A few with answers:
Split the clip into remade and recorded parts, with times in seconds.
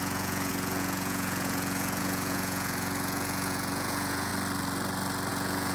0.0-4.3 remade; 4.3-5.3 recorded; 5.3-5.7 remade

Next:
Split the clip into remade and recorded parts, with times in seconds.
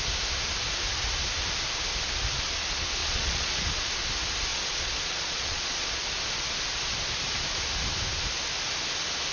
0.0-3.0 recorded; 3.0-3.6 remade; 3.6-4.5 recorded; 4.5-6.0 remade; 6.0-9.3 recorded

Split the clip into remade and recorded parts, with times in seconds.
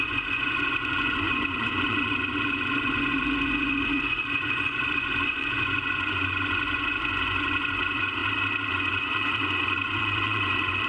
0.0-8.2 remade; 8.2-8.7 recorded; 8.7-10.9 remade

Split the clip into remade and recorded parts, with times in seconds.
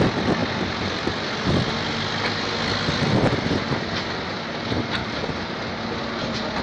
0.0-6.6 recorded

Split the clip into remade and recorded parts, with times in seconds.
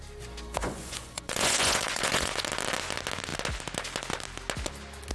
0.0-0.6 recorded; 0.6-2.4 remade; 2.4-5.1 recorded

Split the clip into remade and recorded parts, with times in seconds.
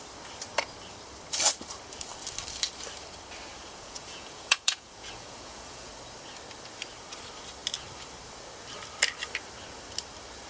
0.0-3.5 recorded; 3.5-5.9 remade; 5.9-10.5 recorded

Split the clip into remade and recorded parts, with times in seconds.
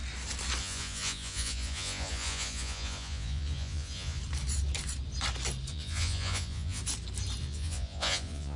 0.0-0.6 recorded; 0.6-4.2 remade; 4.2-5.7 recorded; 5.7-6.8 remade; 6.8-7.4 recorded; 7.4-8.6 remade